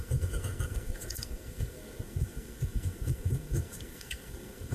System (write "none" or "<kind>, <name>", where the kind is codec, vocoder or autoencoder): codec, SNAC